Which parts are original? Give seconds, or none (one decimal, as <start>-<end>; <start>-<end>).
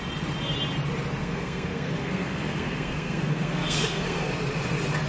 0.0-1.2; 4.3-5.1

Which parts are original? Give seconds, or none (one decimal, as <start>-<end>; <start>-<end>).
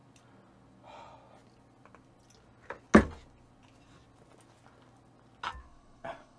0.0-5.6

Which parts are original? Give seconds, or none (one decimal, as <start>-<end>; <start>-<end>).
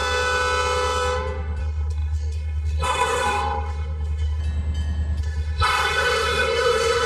0.0-1.6; 4.4-5.2